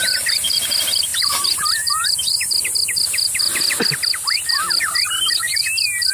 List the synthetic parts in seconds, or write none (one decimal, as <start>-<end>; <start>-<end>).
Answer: none